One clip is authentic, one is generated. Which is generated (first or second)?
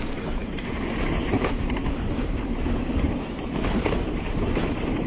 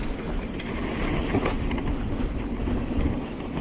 first